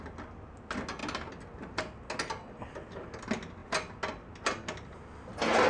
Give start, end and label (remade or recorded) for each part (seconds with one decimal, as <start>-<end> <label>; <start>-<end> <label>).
0.0-5.7 recorded